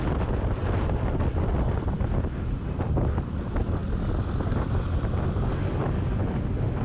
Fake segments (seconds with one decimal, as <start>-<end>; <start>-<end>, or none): none